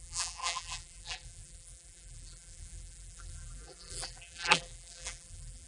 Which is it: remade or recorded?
remade